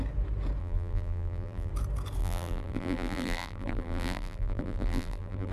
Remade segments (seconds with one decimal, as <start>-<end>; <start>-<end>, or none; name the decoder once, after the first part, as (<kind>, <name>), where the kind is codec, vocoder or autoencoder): 0.6-1.7 (vocoder, BigVGAN v2); 2.2-5.5